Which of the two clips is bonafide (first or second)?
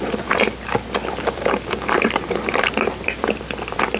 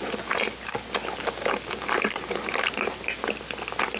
second